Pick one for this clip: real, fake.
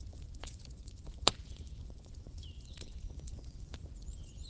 fake